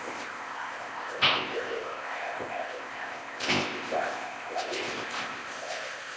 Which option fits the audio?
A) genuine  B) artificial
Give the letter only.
B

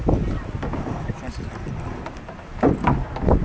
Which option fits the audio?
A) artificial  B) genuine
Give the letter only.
B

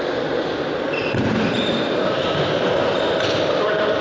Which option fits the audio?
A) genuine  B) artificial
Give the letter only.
A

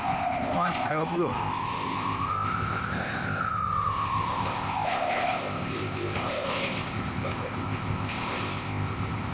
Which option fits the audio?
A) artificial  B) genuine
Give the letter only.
A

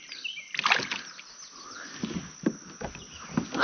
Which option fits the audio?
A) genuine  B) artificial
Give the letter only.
A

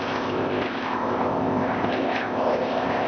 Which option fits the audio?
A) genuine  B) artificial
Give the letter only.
B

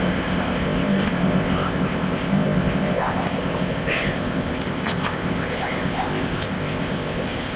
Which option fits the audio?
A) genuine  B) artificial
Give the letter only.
B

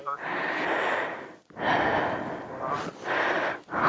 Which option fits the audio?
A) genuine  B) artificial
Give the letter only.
A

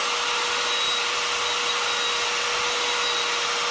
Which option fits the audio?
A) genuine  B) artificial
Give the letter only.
A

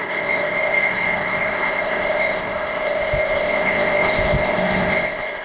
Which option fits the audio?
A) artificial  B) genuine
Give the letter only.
A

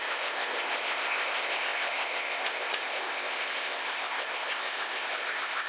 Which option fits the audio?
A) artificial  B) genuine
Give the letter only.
A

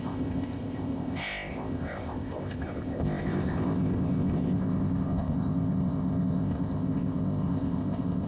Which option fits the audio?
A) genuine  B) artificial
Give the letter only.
B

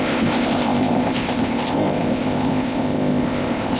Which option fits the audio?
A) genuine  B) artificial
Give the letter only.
B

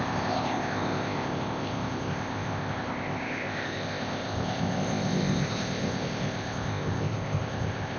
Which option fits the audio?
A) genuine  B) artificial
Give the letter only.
B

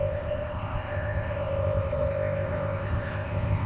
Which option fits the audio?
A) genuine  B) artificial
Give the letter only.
B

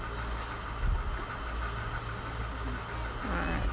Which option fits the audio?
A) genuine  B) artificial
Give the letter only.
A